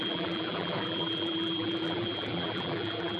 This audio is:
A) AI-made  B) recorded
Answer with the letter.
A